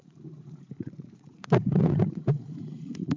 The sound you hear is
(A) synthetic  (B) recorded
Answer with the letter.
A